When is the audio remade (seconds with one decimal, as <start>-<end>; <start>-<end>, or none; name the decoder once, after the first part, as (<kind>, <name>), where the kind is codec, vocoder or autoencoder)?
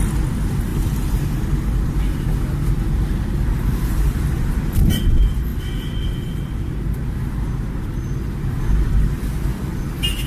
none